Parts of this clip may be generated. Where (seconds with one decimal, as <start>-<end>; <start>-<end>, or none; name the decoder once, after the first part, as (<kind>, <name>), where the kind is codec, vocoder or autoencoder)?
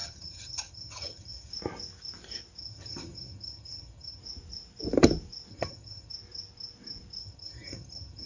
0.0-1.5 (vocoder, HiFi-GAN); 2.6-4.2; 5.5-6.1; 7.2-8.3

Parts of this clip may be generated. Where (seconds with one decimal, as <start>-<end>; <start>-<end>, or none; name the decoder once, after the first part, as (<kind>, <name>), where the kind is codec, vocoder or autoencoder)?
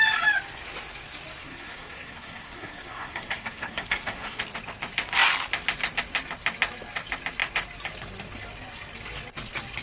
1.4-4.4 (codec, SNAC)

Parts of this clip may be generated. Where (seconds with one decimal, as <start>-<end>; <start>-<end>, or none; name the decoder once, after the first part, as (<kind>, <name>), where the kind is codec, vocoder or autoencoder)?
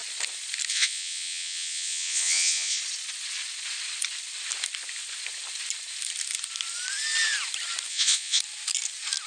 0.7-2.8 (vocoder, Vocos); 7.9-8.4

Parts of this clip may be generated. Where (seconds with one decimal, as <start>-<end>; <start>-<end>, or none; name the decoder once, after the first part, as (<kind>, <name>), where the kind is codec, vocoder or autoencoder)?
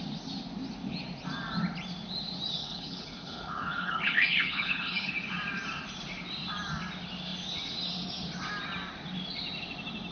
2.6-5.1 (codec, HILCodec)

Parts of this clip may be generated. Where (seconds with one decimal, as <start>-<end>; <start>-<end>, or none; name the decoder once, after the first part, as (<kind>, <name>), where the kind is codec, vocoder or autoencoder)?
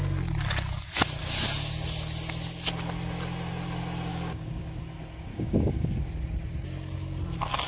4.1-4.8 (codec, DAC); 5.3-6.1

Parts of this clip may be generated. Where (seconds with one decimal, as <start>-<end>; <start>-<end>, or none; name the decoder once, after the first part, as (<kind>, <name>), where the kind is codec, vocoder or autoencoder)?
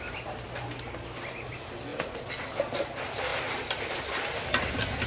3.3-4.3 (vocoder, BigVGAN v2)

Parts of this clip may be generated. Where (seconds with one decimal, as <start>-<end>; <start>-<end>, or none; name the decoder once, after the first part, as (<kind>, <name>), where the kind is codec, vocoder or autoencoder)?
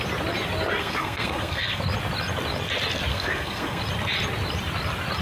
0.8-1.8 (codec, SNAC); 3.1-3.8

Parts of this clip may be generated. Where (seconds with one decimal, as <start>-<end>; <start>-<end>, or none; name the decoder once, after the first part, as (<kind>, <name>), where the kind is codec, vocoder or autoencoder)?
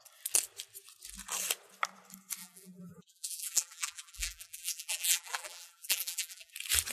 2.4-6.5 (vocoder, BigVGAN v2)